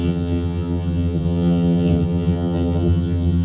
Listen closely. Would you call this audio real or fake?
fake